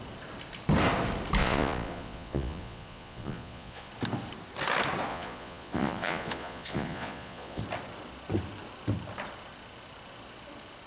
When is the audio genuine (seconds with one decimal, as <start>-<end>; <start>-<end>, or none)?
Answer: 0.0-1.4; 3.9-5.1; 7.6-10.9